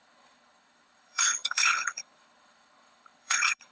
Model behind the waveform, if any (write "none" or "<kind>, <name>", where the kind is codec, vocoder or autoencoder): codec, HILCodec